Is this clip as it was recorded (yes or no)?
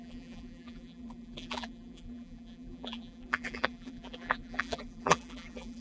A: no